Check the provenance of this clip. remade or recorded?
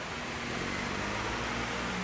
recorded